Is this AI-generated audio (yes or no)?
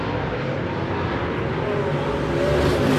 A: no